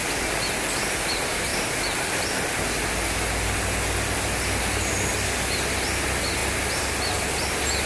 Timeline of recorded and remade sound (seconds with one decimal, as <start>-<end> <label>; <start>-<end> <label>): 0.0-7.9 recorded